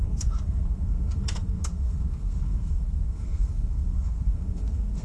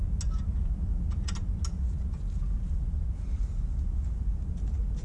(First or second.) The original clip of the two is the second